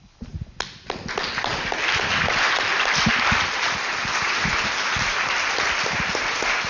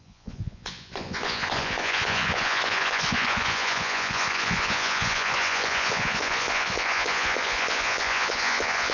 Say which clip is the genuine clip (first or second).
first